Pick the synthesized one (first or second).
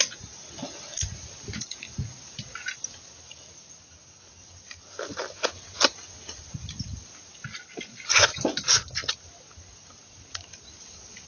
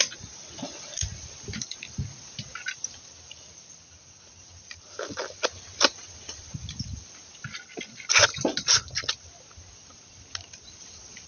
second